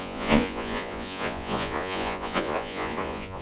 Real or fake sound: fake